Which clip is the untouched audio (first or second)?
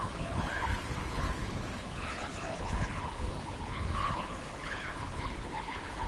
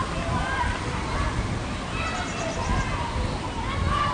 second